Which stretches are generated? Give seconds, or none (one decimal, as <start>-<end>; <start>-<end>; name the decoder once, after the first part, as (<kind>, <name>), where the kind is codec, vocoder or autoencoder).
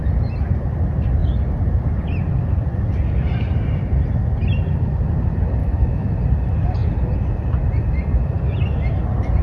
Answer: 5.6-6.1 (autoencoder, DAC-VAE)